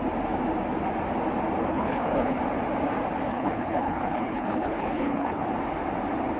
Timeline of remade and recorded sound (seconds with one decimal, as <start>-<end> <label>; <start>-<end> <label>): 0.0-1.7 recorded; 1.7-2.4 remade; 2.4-3.3 recorded; 3.3-5.5 remade; 5.5-6.4 recorded